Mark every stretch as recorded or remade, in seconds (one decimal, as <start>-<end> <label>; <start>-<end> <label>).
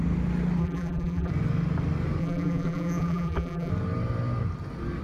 0.0-0.6 recorded; 0.6-1.3 remade; 1.3-2.2 recorded; 2.2-3.7 remade; 3.7-5.0 recorded